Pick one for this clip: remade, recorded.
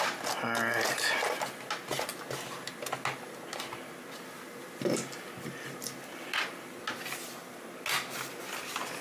recorded